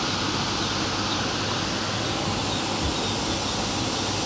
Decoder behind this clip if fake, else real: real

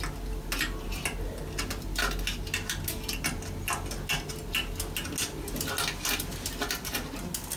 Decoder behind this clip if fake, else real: real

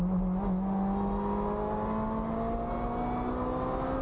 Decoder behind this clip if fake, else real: real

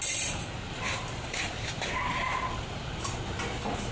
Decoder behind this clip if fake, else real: real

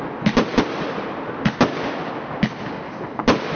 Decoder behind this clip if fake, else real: real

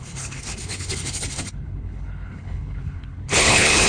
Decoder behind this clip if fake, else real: fake, codec, HILCodec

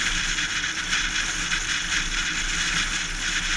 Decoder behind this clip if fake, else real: real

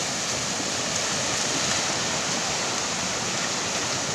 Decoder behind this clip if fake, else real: real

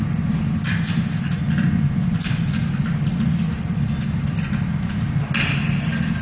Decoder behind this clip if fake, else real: real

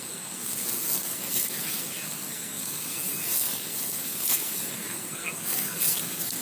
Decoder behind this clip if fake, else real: fake, codec, SNAC